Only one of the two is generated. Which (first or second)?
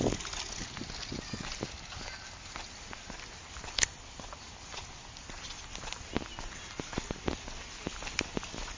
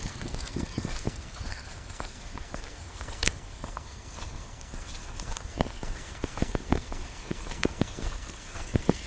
second